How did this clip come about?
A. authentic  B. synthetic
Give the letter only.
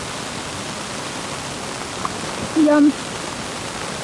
A